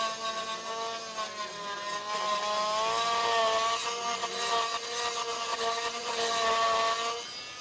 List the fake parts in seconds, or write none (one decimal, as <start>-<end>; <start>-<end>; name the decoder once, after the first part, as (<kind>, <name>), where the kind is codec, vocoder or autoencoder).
3.8-4.4 (vocoder, BigVGAN v2); 5.5-6.1